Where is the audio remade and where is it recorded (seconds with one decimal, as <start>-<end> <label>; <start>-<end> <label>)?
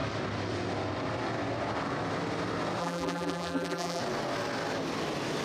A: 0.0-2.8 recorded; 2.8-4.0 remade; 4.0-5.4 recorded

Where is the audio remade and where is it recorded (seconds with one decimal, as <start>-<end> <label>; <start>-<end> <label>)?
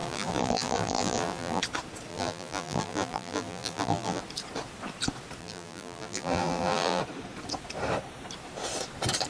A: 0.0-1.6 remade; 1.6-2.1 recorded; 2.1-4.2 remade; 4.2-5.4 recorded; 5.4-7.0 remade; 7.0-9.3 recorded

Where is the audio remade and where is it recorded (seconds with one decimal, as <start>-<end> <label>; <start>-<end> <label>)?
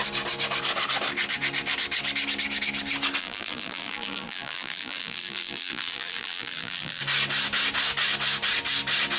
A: 0.0-3.2 recorded; 3.2-7.0 remade; 7.0-9.2 recorded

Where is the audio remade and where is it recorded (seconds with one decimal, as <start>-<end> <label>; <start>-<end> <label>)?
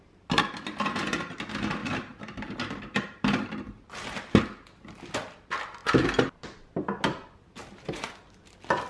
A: 0.0-1.8 recorded; 1.8-4.4 remade; 4.4-7.6 recorded; 7.6-8.1 remade; 8.1-8.9 recorded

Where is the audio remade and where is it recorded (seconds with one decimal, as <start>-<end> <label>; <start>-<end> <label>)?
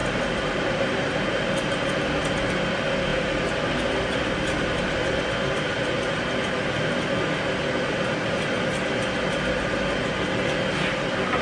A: 0.0-1.8 remade; 1.8-3.1 recorded; 3.1-5.2 remade; 5.2-11.4 recorded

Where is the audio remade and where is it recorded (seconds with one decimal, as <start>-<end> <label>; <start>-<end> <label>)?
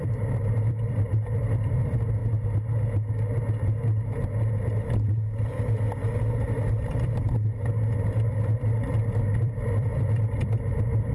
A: 0.0-2.2 remade; 2.2-6.7 recorded; 6.7-11.1 remade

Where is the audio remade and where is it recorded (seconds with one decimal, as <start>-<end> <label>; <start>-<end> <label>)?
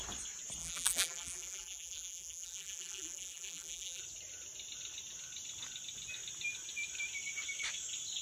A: 0.0-0.6 recorded; 0.6-4.0 remade; 4.0-8.2 recorded